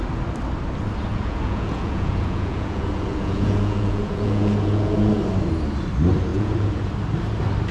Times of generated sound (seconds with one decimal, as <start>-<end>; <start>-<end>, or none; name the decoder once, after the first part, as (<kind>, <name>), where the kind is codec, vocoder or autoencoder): 1.1-5.1 (vocoder, Vocos); 6.3-6.9

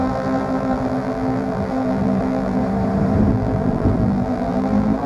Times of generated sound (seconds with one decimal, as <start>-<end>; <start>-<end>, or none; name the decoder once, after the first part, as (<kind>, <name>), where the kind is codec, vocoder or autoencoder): 0.0-2.6 (vocoder, BigVGAN v2); 3.3-5.1

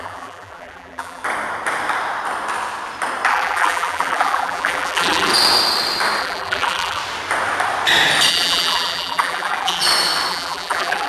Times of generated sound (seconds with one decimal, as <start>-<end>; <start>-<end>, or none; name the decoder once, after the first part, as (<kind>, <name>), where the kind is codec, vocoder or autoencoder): 0.0-1.2 (vocoder, BigVGAN v2); 3.3-5.3; 6.2-7.0; 8.3-9.8; 10.3-11.1

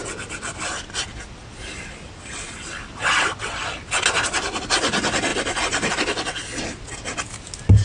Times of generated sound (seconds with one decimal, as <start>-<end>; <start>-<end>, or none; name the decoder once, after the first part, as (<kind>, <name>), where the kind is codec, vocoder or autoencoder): none